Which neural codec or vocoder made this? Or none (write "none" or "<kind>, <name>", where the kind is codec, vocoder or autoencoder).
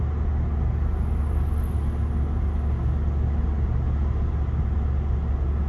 none